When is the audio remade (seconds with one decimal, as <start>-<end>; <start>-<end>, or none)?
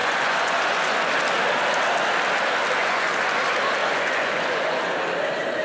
0.0-1.1; 2.8-3.4; 3.8-4.8